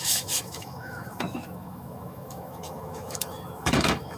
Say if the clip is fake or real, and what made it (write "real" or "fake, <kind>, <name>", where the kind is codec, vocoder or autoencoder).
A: fake, autoencoder, DAC-VAE